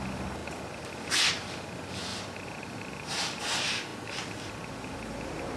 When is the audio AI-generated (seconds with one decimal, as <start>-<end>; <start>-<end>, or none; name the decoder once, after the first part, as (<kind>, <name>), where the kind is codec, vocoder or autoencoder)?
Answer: 2.1-3.4 (vocoder, BigVGAN v2)

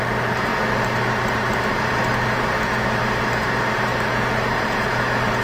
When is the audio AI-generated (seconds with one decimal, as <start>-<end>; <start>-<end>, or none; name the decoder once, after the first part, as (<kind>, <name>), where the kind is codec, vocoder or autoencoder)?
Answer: none

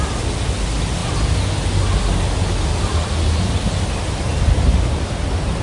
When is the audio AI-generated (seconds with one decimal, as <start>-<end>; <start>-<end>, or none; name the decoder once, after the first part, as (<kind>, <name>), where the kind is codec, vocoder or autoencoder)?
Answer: none

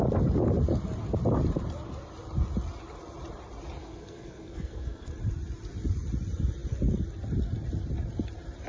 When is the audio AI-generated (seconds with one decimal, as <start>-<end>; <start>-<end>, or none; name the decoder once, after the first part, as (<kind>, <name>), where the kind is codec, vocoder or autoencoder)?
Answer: 3.8-5.1 (codec, SNAC)